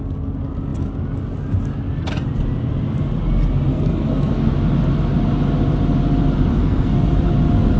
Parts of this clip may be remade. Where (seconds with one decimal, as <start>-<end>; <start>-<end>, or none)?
3.7-4.5; 6.5-7.2